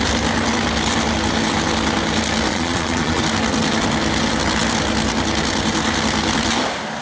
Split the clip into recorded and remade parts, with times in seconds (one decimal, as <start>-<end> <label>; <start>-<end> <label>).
0.0-2.5 recorded; 2.5-3.2 remade; 3.2-7.0 recorded